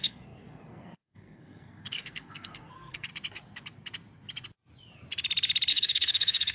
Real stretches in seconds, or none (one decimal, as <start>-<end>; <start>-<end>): 3.1-5.7